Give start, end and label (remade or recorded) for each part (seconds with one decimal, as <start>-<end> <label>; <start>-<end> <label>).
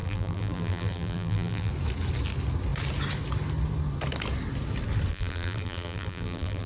0.0-1.7 remade; 1.7-5.1 recorded; 5.1-6.7 remade